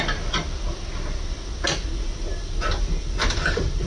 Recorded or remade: recorded